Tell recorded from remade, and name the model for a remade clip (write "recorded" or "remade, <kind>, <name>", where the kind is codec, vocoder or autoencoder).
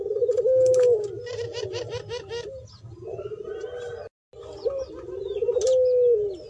recorded